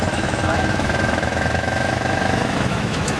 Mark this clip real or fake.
fake